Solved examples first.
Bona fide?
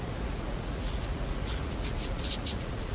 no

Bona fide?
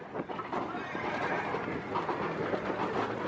yes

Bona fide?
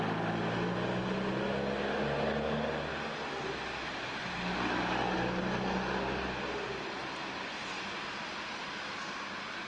yes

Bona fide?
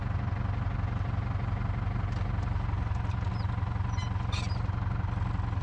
yes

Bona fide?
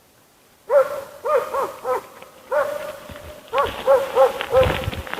yes